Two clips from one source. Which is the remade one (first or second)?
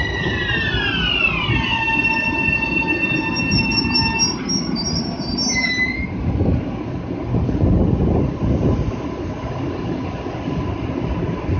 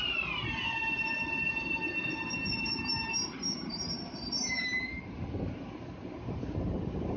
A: second